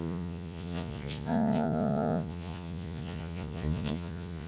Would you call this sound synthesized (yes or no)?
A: yes